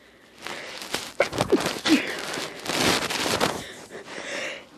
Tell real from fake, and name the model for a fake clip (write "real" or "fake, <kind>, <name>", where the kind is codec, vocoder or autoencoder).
real